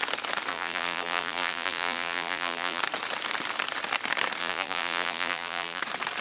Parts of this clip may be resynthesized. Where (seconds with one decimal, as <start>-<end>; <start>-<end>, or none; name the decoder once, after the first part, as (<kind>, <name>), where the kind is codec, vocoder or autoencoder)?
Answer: 0.5-2.8 (vocoder, BigVGAN v2); 4.4-5.8